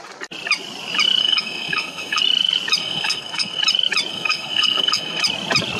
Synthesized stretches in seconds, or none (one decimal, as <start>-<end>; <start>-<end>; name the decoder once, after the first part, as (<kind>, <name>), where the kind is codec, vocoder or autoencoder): 1.2-2.2 (codec, SNAC); 2.8-3.6; 4.1-5.2